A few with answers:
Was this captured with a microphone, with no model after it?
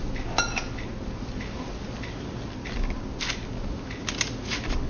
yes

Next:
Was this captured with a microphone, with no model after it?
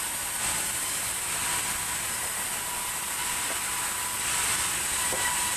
yes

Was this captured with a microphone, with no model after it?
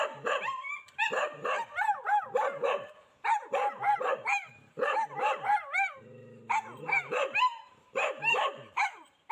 no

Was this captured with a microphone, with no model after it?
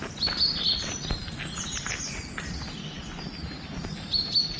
yes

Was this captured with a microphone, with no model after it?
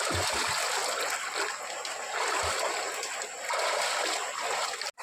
yes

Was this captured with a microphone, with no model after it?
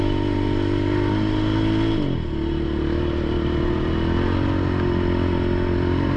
yes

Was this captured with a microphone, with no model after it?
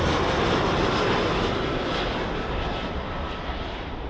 yes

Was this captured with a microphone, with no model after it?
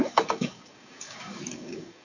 no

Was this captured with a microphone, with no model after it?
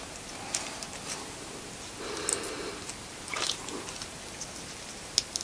yes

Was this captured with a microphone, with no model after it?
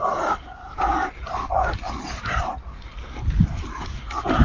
yes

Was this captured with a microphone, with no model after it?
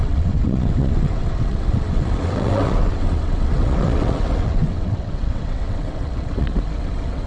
no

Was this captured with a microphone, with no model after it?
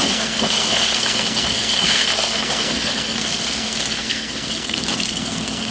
no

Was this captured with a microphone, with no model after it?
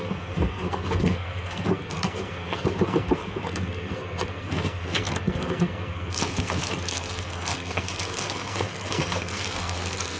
no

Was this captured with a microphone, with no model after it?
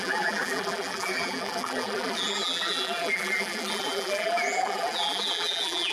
no